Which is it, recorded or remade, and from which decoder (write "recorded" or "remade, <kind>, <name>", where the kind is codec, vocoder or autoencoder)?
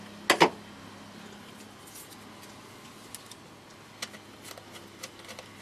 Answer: recorded